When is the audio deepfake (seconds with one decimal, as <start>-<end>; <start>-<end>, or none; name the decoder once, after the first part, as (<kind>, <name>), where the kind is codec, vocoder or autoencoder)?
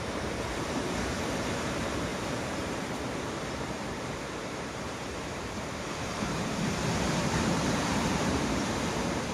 0.0-9.3 (vocoder, BigVGAN v2)